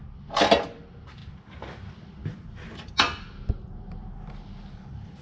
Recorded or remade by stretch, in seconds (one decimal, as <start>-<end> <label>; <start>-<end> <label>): 0.0-5.2 recorded